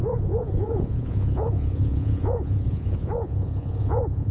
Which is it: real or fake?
fake